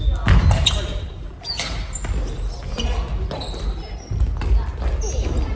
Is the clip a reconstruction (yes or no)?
no